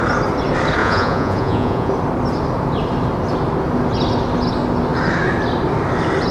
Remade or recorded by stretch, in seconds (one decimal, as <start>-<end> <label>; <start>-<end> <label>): 0.0-0.8 recorded; 0.8-1.9 remade; 1.9-6.3 recorded